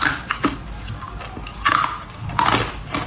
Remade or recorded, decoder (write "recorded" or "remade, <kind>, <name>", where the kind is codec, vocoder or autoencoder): recorded